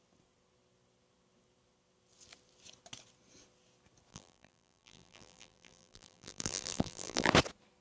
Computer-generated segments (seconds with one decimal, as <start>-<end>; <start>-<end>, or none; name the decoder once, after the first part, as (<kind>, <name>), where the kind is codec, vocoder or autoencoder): 4.1-7.3 (vocoder, BigVGAN v2)